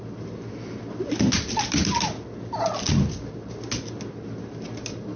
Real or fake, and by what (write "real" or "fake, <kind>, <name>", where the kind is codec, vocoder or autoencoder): real